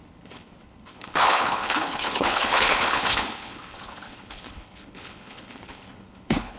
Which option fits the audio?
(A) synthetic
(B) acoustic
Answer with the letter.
A